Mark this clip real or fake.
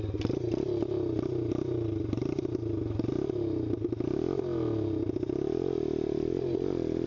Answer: real